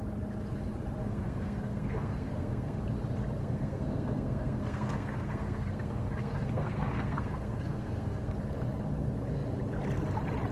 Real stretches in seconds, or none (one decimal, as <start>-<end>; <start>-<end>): 0.0-1.0; 2.8-3.4; 8.3-10.5